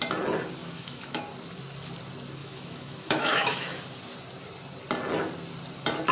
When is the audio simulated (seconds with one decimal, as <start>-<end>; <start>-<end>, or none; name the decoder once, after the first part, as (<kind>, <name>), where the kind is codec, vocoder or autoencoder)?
0.6-1.2 (autoencoder, DAC-VAE); 2.4-3.8